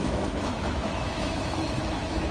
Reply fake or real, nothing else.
fake